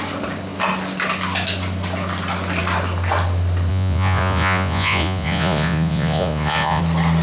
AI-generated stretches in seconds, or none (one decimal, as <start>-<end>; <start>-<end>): 3.7-6.8